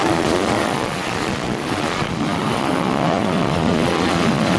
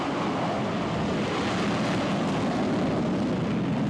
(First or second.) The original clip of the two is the second